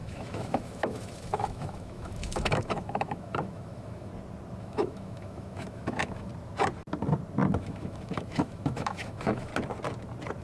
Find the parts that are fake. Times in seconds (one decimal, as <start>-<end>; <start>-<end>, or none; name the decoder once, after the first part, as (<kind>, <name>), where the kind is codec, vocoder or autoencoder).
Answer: 0.0-4.1 (autoencoder, DAC-VAE); 4.6-6.3; 7.6-9.5